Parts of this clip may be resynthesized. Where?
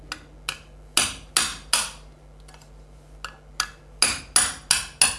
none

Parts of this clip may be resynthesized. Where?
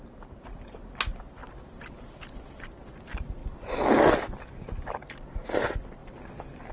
1.4-2.3 (vocoder, BigVGAN v2); 3.4-4.4; 6.0-6.7